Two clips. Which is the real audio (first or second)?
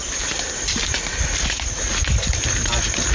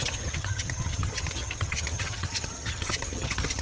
first